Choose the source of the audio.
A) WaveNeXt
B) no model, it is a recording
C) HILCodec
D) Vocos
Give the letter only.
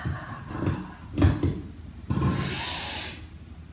B